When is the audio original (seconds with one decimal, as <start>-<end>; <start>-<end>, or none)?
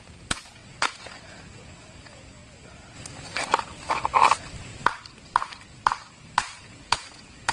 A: 2.4-6.6